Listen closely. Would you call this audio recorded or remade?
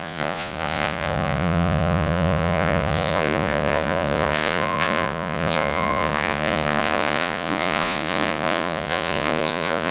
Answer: remade